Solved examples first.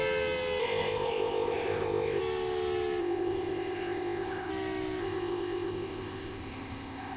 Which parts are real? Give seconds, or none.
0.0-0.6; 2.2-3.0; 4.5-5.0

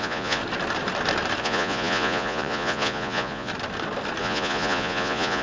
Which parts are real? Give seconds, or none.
0.4-1.4; 3.5-4.2

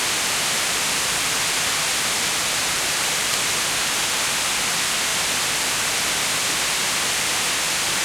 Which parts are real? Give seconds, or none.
0.0-2.6; 3.5-8.0

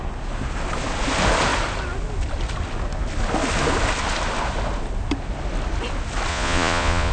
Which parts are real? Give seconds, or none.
0.0-6.3

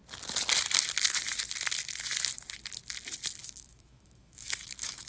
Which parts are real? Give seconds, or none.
0.0-3.4

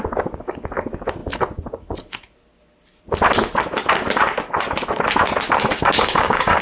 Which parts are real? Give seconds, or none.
0.0-5.7

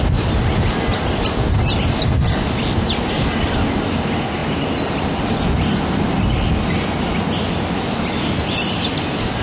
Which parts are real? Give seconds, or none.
0.0-9.4

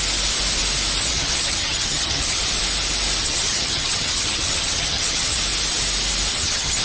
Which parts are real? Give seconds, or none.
0.0-1.0; 2.4-3.2; 5.4-6.3